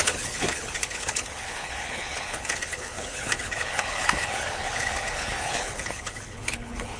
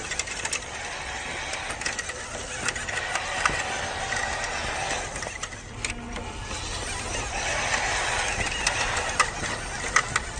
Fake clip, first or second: first